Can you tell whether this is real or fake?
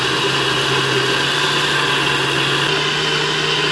real